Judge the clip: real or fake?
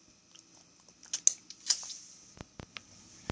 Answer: real